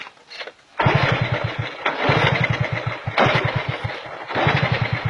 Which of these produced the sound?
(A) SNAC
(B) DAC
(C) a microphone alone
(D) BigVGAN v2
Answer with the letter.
C